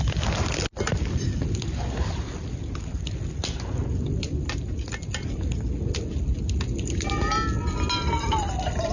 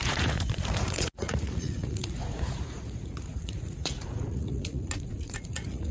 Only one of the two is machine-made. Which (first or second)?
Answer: second